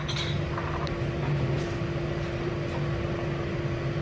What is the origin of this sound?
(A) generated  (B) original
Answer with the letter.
B